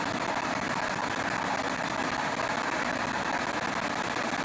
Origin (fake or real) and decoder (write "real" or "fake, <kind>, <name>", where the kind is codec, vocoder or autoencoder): real